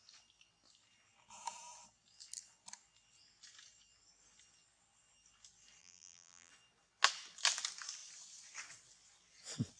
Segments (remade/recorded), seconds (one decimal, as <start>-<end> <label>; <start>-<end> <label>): 0.0-5.8 recorded; 5.8-6.5 remade; 6.5-9.8 recorded